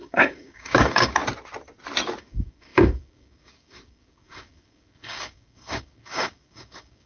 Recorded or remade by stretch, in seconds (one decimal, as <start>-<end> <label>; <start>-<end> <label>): 0.0-1.2 remade; 1.2-2.2 recorded; 2.2-7.1 remade